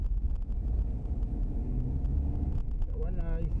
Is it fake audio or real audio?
real